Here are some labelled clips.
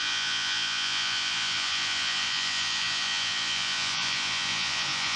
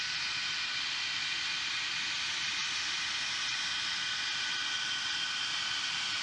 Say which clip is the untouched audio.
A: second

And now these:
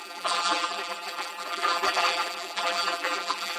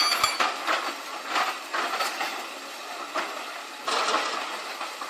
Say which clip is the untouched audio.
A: second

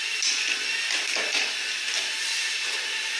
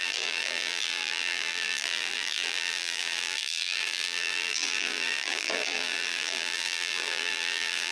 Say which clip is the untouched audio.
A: first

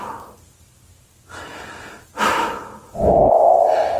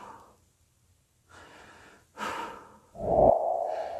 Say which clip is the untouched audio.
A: first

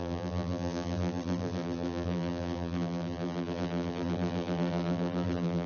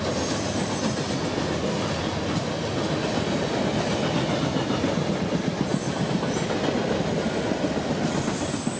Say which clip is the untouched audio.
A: second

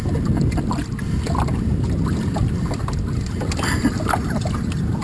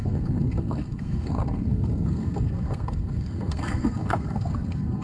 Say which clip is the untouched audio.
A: first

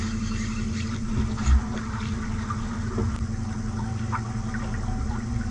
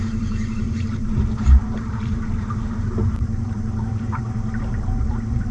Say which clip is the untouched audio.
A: first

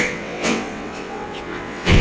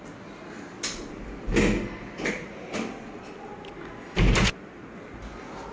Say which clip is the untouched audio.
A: second